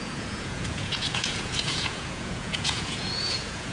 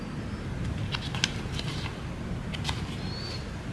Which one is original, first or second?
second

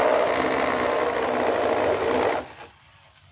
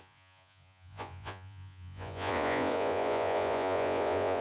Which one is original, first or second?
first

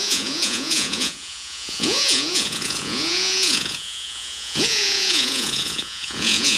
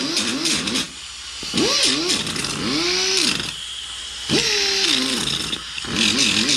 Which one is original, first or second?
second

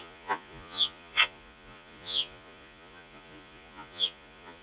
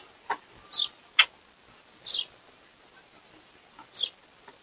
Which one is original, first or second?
second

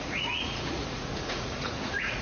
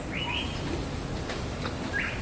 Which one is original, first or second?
second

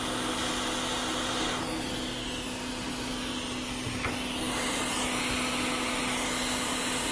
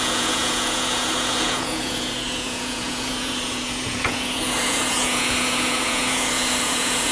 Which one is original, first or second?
first